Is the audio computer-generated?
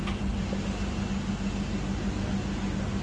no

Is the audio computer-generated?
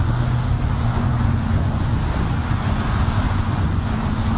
yes